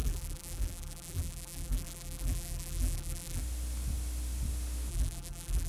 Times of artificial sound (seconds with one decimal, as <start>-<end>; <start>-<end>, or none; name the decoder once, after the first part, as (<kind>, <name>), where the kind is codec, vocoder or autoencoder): 0.0-3.4 (vocoder, BigVGAN v2); 4.9-5.7